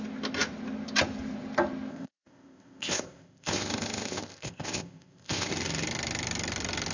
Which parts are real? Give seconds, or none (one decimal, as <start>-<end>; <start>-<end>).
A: 0.0-1.9; 5.5-6.9